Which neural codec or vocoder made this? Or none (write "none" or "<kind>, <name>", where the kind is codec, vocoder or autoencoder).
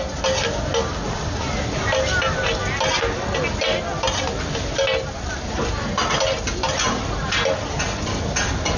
none